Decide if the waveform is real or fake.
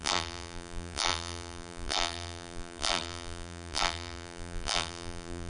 fake